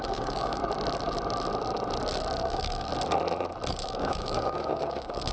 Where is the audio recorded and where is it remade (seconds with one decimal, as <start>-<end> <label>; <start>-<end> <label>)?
0.0-0.6 remade; 0.6-2.4 recorded; 2.4-2.9 remade; 2.9-3.7 recorded; 3.7-5.3 remade